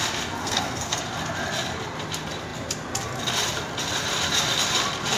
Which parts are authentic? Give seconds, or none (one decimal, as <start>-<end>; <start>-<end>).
0.0-0.4; 1.0-5.2